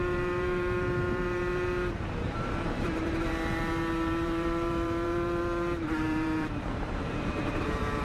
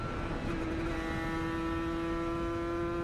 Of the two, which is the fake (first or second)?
first